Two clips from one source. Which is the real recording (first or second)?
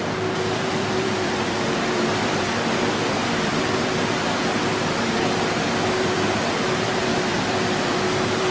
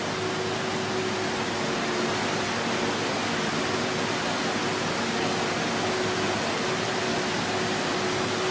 second